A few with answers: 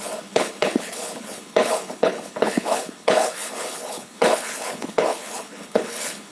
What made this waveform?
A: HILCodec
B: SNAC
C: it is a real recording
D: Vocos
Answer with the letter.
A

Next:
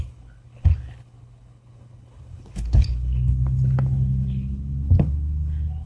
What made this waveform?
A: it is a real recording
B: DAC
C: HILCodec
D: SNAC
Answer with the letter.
C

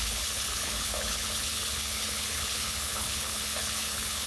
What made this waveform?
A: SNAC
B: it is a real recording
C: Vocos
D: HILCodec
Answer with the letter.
D